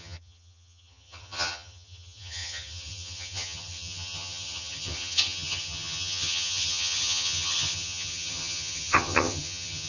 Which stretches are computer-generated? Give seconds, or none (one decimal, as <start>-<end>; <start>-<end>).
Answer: 0.0-9.9